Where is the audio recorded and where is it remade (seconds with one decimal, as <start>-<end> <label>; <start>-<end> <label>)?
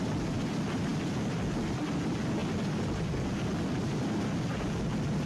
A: 0.0-5.3 recorded